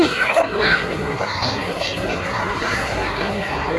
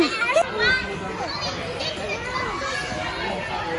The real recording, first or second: second